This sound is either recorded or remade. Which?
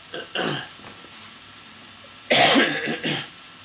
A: recorded